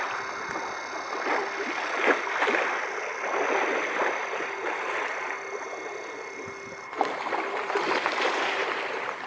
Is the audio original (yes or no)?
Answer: yes